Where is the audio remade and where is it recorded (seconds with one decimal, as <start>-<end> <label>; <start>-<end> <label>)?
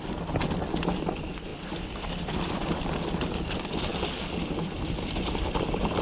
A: 0.0-1.5 recorded; 1.5-2.8 remade; 2.8-6.0 recorded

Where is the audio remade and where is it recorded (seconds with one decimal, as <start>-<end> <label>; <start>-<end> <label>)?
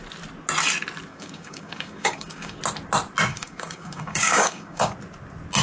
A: 0.0-1.1 recorded; 1.1-2.6 remade; 2.6-3.3 recorded; 3.3-4.9 remade; 4.9-5.6 recorded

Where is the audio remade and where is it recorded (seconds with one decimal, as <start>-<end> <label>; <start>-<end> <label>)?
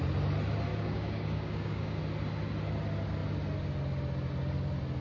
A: 0.0-0.7 recorded; 0.7-2.0 remade; 2.0-5.0 recorded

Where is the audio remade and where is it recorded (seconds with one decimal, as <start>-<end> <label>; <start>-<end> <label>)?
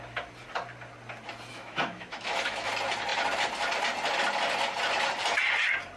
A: 0.0-1.5 recorded; 1.5-2.7 remade; 2.7-6.0 recorded